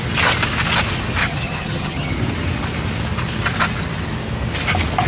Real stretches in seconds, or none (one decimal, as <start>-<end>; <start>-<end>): 0.0-1.2; 2.1-5.1